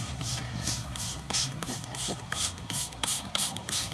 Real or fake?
fake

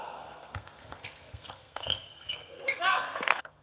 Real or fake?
fake